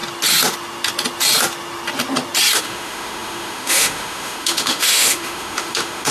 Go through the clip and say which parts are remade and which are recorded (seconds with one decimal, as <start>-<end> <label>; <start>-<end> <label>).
0.0-2.6 recorded; 2.6-6.1 remade